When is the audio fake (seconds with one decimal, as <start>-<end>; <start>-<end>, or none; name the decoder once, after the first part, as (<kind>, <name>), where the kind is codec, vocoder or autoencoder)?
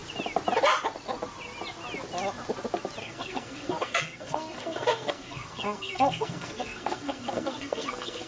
3.0-8.3 (codec, SNAC)